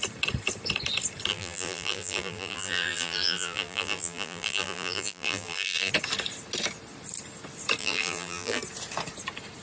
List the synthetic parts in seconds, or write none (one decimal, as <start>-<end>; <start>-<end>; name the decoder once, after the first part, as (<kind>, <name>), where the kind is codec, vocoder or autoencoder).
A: 1.3-5.9 (vocoder, BigVGAN v2); 7.8-8.6